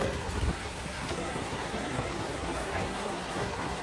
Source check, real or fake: fake